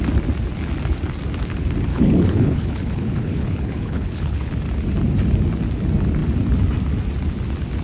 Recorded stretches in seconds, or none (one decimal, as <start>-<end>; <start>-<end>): 0.0-1.9; 4.5-7.8